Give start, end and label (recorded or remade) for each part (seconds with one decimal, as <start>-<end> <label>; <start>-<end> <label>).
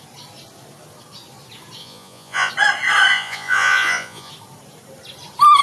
0.0-1.8 recorded; 1.8-2.5 remade; 2.5-3.1 recorded; 3.1-4.3 remade; 4.3-5.6 recorded